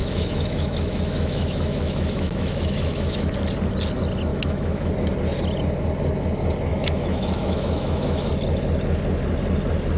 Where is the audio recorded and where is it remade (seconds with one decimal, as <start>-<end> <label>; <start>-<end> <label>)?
0.0-3.3 remade; 3.3-4.3 recorded; 4.3-4.9 remade; 4.9-6.7 recorded; 6.7-8.3 remade; 8.3-10.0 recorded